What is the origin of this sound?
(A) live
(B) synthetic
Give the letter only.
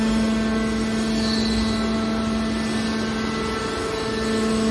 A